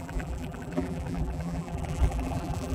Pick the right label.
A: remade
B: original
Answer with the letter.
A